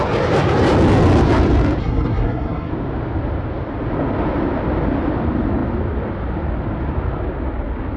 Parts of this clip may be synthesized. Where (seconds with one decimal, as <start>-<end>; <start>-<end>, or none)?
1.8-2.7